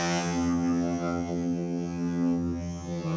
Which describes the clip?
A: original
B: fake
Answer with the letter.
B